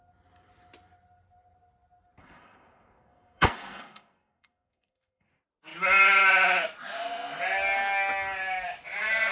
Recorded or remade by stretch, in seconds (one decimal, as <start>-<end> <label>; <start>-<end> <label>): 0.0-2.2 recorded; 2.2-5.3 remade; 5.3-9.3 recorded